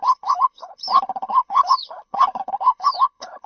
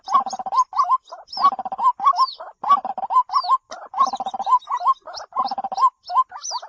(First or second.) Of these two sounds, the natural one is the second